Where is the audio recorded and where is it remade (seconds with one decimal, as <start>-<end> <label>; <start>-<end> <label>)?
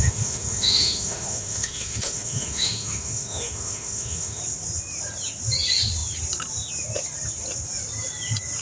0.0-4.4 remade; 4.4-8.6 recorded